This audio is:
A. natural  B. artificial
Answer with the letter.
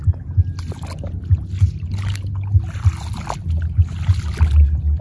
A